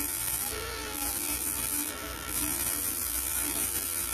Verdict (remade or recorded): remade